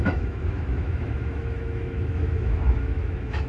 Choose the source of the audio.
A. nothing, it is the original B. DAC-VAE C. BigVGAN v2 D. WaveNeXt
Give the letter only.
B